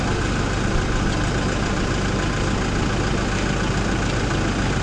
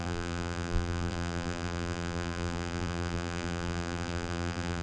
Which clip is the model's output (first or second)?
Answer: second